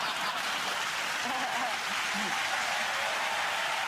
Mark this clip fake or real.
real